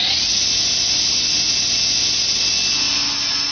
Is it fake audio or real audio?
real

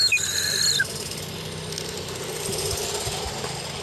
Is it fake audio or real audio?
real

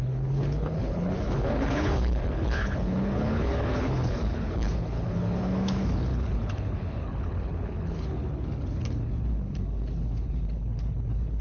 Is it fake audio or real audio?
fake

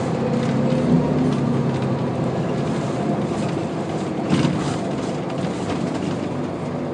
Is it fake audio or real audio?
real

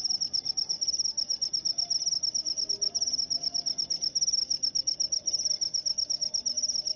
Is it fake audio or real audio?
real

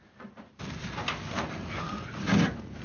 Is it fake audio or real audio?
real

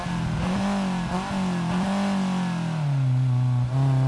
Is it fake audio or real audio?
real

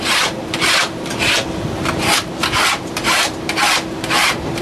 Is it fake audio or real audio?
fake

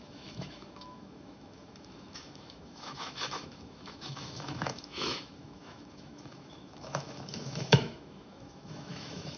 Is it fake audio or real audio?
fake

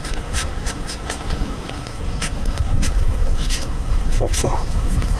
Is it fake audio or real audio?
fake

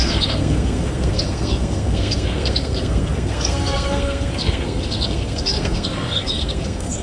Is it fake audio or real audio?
fake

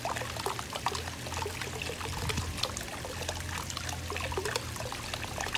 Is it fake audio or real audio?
real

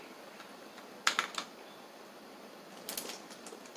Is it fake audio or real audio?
real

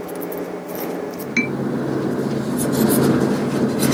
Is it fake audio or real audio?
real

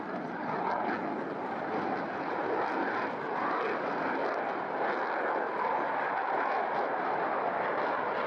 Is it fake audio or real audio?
real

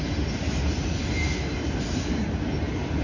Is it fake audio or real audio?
real